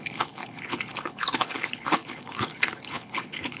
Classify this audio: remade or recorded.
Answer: remade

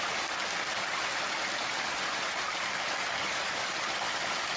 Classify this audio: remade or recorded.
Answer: recorded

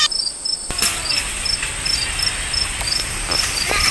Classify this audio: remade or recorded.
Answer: recorded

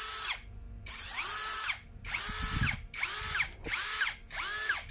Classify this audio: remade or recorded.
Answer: recorded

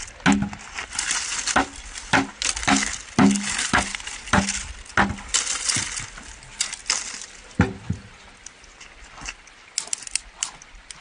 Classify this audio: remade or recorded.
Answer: recorded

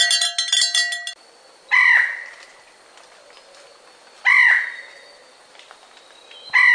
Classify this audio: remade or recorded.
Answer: recorded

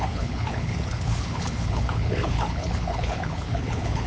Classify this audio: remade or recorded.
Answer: remade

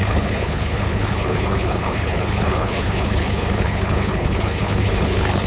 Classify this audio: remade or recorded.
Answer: remade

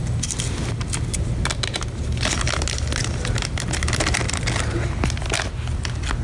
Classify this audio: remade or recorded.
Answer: recorded